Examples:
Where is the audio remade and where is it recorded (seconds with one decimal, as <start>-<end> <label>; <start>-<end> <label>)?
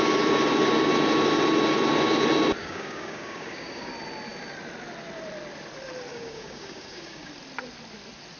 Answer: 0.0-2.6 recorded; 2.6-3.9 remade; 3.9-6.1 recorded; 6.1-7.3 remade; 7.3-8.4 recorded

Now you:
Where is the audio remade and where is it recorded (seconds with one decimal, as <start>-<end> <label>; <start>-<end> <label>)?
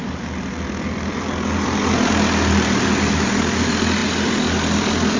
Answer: 0.0-5.2 recorded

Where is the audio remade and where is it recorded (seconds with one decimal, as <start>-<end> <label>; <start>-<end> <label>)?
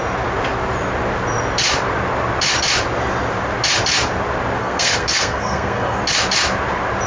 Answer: 0.0-4.6 recorded; 4.6-6.0 remade; 6.0-7.1 recorded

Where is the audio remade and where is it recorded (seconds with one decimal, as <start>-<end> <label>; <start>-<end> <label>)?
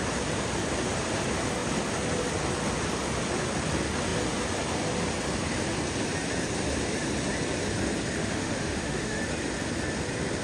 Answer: 0.0-8.2 recorded; 8.2-9.2 remade; 9.2-10.4 recorded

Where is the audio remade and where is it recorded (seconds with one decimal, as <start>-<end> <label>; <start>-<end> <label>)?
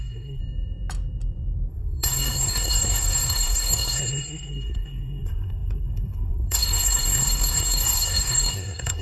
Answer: 0.0-0.4 remade; 0.4-1.7 recorded; 1.7-9.0 remade